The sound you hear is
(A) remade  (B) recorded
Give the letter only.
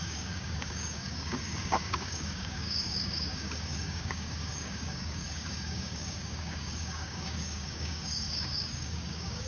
A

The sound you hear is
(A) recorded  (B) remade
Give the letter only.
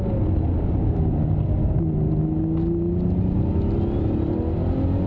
A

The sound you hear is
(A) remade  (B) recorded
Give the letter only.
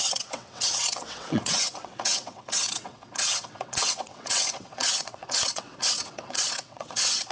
A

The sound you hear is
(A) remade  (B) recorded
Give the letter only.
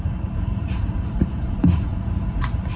A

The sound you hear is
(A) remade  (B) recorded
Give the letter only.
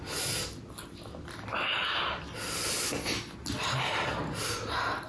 B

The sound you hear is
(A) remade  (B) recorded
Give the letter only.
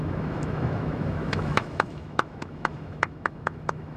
A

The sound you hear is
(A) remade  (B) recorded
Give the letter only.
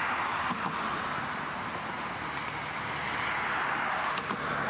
B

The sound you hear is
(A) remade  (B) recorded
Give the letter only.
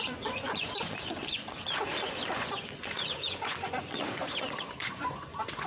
A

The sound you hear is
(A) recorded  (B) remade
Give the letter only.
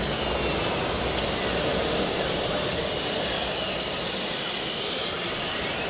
A